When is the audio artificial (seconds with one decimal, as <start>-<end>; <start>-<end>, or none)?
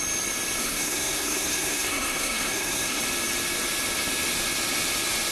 0.6-3.0